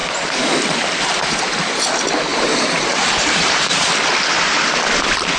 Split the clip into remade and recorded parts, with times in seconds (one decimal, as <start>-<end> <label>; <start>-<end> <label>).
0.0-2.3 recorded; 2.3-3.9 remade; 3.9-5.4 recorded